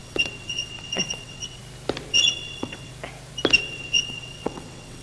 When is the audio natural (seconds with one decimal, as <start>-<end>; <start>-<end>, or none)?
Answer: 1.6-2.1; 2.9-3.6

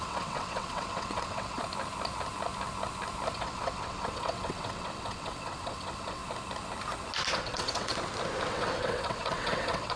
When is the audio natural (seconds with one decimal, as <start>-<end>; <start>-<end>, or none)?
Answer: 1.6-3.3; 6.2-7.3; 7.9-8.5

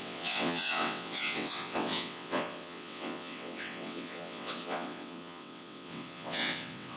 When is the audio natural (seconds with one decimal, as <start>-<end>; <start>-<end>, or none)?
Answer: none

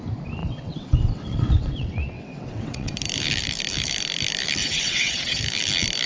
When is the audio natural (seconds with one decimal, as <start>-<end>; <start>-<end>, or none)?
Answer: 0.0-0.4; 2.9-4.6; 5.4-6.1